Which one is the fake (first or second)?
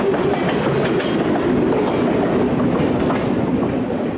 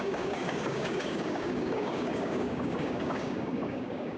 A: second